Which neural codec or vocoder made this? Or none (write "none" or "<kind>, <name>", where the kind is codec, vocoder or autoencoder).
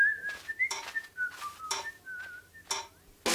none